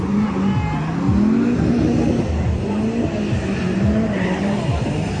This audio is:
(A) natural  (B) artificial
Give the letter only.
A